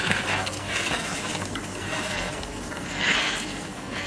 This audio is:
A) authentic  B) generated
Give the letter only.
B